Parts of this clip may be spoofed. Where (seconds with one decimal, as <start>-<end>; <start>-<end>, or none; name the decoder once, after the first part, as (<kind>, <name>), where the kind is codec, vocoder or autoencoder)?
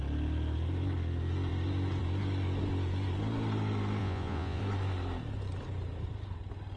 4.0-4.6 (vocoder, Vocos)